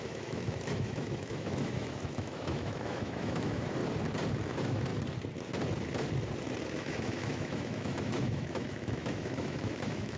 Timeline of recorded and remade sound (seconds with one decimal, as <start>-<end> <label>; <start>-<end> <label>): 0.0-3.8 remade; 3.8-4.5 recorded; 4.5-4.9 remade; 4.9-6.7 recorded; 6.7-10.2 remade